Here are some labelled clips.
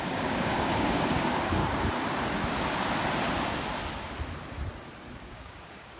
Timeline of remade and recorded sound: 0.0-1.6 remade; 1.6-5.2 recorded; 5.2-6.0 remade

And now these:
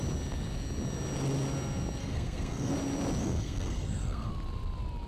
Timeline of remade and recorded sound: 0.0-2.0 recorded; 2.0-2.7 remade; 2.7-3.2 recorded; 3.2-4.3 remade; 4.3-5.1 recorded

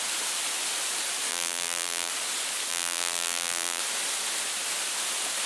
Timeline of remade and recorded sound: 0.0-1.3 recorded; 1.3-2.1 remade; 2.1-2.7 recorded; 2.7-3.8 remade; 3.8-5.5 recorded

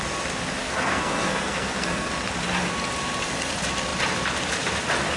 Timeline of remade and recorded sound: 0.0-0.6 recorded; 0.6-2.1 remade; 2.1-5.2 recorded